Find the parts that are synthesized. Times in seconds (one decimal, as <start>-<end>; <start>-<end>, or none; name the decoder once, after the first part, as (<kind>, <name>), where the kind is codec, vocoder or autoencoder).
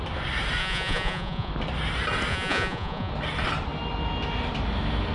0.6-1.5 (vocoder, Vocos); 2.3-3.1